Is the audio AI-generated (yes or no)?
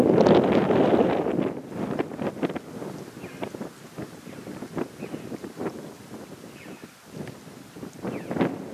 no